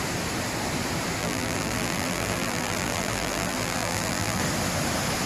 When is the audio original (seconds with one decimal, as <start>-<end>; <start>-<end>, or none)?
0.0-1.2; 4.4-5.3